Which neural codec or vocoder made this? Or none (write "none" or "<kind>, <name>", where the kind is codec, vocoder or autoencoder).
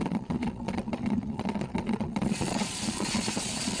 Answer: vocoder, Vocos